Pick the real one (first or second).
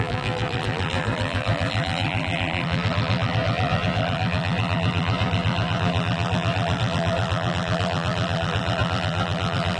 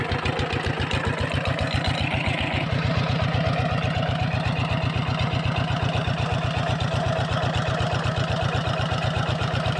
second